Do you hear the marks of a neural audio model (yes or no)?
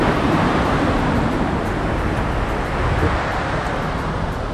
no